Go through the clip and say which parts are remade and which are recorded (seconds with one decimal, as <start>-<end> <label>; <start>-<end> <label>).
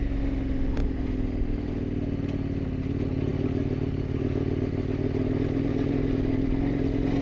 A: 0.0-7.2 recorded